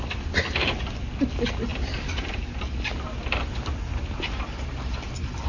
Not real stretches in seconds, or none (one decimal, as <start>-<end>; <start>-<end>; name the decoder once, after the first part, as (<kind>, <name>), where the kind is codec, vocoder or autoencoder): none